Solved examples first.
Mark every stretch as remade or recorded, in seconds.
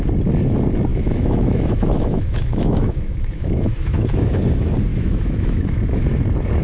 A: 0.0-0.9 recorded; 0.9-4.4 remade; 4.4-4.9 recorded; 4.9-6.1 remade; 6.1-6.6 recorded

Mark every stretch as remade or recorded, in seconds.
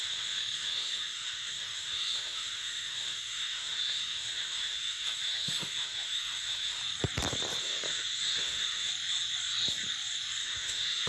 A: 0.0-6.8 remade; 6.8-7.6 recorded; 7.6-8.9 remade; 8.9-10.4 recorded; 10.4-11.1 remade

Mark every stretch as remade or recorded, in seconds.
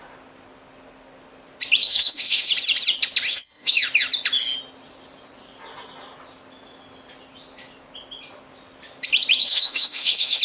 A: 0.0-1.8 recorded; 1.8-2.5 remade; 2.5-3.3 recorded; 3.3-3.8 remade; 3.8-9.4 recorded; 9.4-10.4 remade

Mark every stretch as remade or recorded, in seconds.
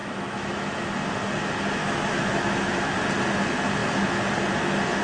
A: 0.0-0.7 remade; 0.7-1.8 recorded; 1.8-2.9 remade; 2.9-5.0 recorded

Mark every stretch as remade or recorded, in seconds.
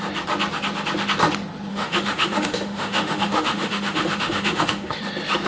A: 0.0-1.7 recorded; 1.7-5.0 remade; 5.0-5.5 recorded